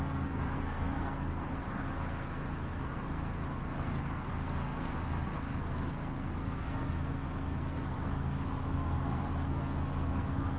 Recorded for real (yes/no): no